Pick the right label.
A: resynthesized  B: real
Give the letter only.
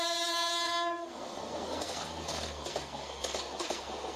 A